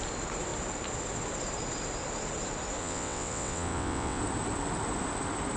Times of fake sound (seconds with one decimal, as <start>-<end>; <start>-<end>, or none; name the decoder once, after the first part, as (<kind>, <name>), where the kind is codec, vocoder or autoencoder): 2.8-4.2 (vocoder, WaveNeXt)